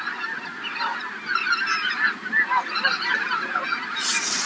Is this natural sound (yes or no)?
yes